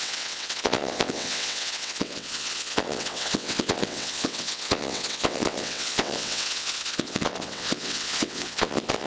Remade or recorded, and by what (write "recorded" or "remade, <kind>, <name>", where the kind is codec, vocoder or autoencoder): remade, vocoder, WaveNeXt